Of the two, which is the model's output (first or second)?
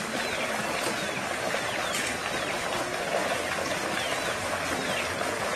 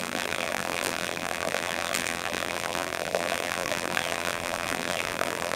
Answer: second